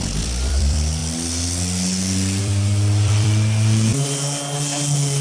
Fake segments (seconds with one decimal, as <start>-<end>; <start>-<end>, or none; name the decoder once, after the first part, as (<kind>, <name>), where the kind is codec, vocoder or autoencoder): 0.0-1.0 (vocoder, BigVGAN v2); 2.4-3.9